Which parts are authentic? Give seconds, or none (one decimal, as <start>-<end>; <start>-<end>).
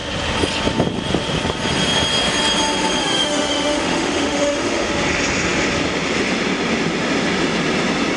0.0-3.0; 4.9-8.2